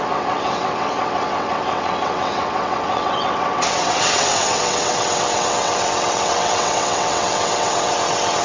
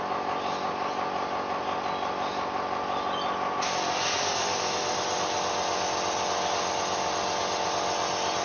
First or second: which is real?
second